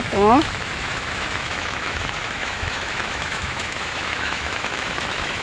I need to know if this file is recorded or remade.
remade